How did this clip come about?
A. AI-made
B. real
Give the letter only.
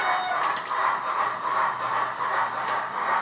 A